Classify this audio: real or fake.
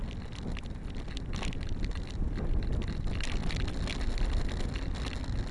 real